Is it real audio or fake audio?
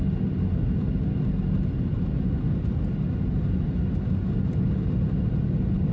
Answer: real